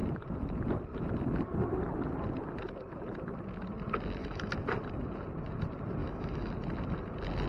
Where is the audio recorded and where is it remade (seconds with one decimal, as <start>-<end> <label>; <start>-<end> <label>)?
0.0-4.2 recorded; 4.2-4.7 remade; 4.7-6.0 recorded; 6.0-6.5 remade; 6.5-7.5 recorded